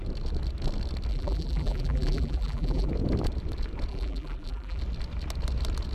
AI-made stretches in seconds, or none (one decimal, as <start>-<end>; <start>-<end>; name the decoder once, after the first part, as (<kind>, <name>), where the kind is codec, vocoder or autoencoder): 1.1-2.9 (vocoder, BigVGAN v2); 3.9-4.8